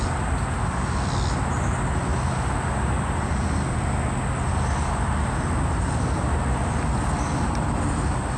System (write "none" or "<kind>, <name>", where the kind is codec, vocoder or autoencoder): none